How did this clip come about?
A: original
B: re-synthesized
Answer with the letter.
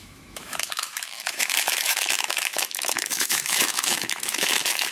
B